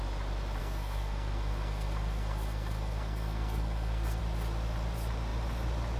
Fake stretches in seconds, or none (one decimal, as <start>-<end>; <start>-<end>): 0.6-4.2